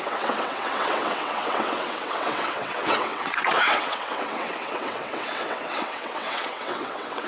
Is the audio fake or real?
fake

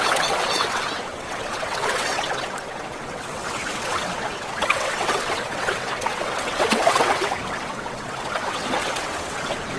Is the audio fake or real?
fake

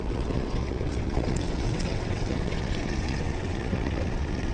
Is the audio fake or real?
fake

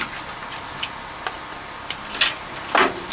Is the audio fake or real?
real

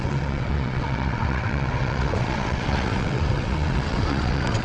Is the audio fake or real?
fake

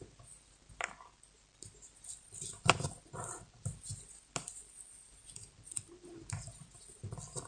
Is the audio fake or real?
real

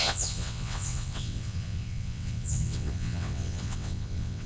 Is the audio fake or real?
fake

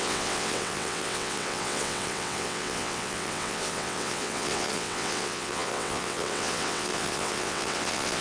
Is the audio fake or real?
fake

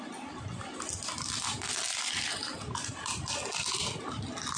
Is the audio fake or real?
real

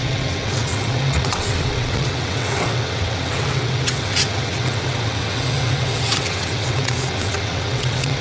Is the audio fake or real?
fake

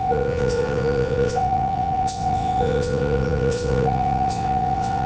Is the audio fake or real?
fake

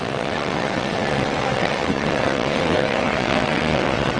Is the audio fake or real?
fake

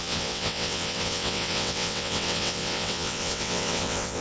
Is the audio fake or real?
fake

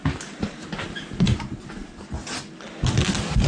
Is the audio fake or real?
real